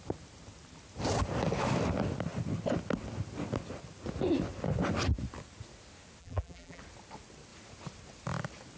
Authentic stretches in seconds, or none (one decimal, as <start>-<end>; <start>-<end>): 0.0-6.2; 6.8-8.8